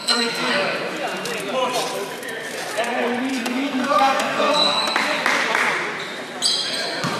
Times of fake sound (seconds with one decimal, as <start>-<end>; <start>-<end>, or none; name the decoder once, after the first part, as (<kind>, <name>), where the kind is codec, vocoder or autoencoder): 0.0-0.5 (codec, SNAC); 3.3-4.8